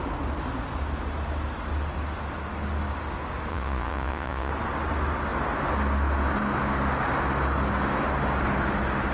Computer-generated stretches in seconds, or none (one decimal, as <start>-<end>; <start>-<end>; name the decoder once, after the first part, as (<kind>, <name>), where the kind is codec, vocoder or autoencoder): 3.5-4.5 (vocoder, Vocos)